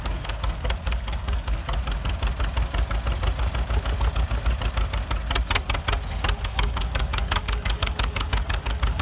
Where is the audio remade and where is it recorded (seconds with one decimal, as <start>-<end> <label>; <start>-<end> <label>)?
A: 0.0-1.6 remade; 1.6-6.4 recorded; 6.4-9.0 remade